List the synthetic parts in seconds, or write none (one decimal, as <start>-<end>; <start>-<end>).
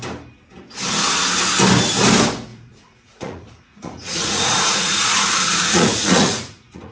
2.5-6.9